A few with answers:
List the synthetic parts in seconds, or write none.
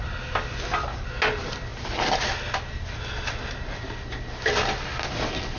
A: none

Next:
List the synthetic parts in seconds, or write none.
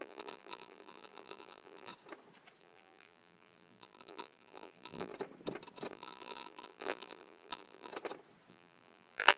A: 0.0-1.9 (vocoder, BigVGAN v2); 2.6-5.1; 5.9-7.9; 8.5-9.4